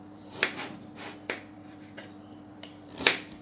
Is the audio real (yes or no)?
no